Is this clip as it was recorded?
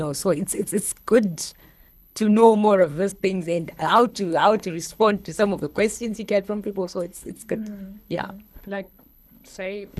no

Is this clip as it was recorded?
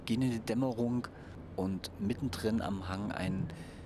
yes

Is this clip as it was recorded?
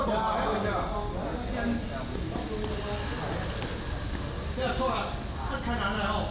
yes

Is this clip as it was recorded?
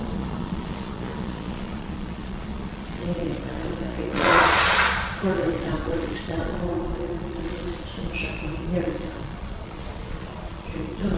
no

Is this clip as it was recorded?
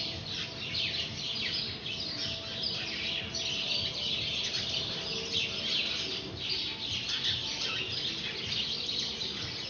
yes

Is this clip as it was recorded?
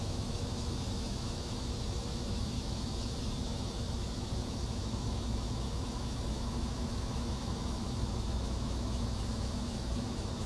no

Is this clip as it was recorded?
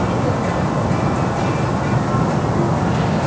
yes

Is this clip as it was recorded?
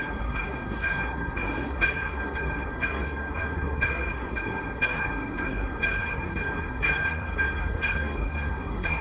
no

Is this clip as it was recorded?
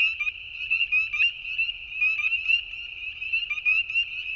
yes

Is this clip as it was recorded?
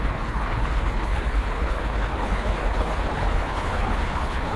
no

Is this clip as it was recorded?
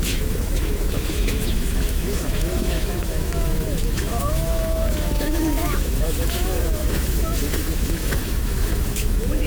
no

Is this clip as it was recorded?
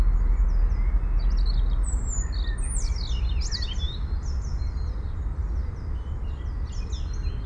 yes